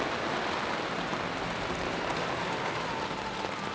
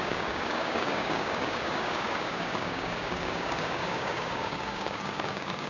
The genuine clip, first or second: first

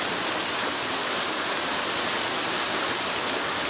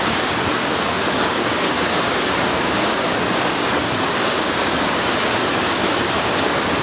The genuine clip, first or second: first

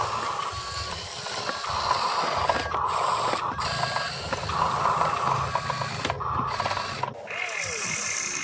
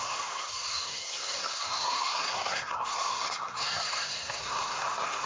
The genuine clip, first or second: first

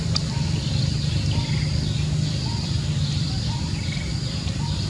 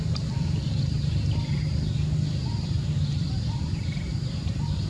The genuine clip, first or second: first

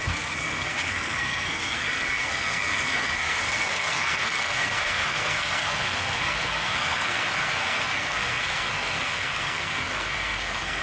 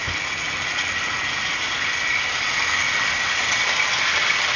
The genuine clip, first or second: second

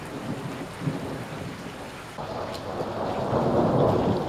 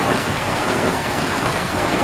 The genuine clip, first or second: first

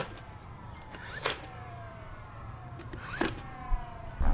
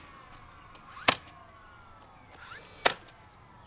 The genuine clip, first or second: second